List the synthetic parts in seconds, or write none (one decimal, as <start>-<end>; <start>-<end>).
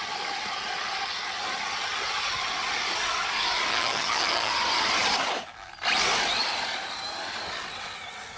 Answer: 3.7-4.5